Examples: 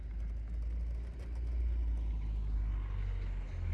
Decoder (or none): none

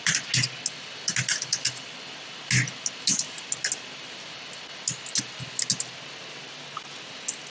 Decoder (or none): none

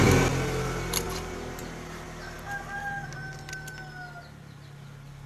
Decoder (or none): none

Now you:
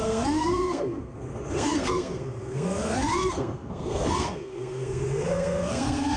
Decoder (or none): codec, SNAC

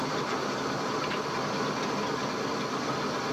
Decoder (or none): none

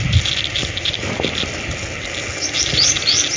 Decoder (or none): none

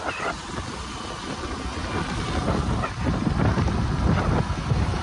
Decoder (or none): none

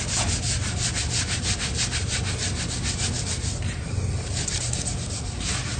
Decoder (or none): none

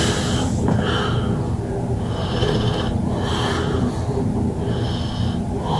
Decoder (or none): none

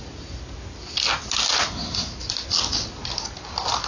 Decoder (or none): none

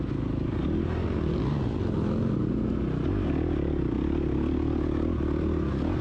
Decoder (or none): none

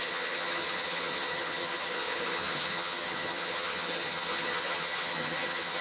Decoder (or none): vocoder, HiFi-GAN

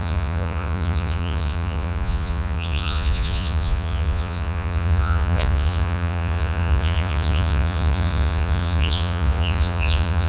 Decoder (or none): vocoder, Vocos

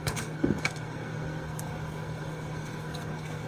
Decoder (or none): codec, SNAC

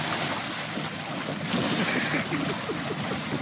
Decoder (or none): none